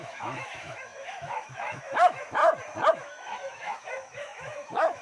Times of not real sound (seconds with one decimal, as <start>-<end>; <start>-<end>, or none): 0.0-2.4; 2.9-5.0

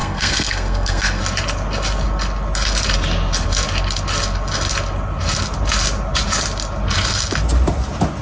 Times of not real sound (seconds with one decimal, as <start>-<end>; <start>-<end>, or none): 0.0-1.2

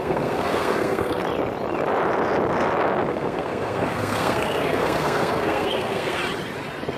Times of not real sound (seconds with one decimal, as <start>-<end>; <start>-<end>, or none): 0.0-1.2; 3.1-6.2